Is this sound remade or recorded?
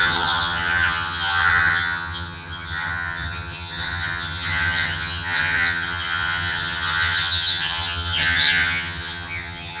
remade